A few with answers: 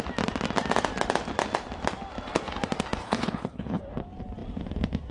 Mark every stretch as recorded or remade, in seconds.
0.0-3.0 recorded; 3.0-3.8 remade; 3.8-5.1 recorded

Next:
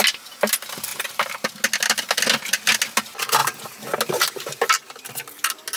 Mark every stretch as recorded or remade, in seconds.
0.0-5.8 recorded